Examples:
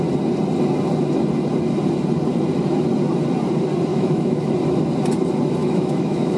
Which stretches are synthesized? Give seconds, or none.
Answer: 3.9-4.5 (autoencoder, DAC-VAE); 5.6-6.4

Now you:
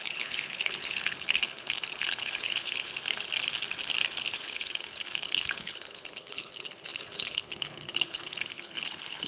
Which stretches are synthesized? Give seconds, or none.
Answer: 0.0-2.9 (codec, HILCodec); 4.2-9.3